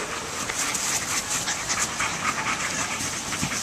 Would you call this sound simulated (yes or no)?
no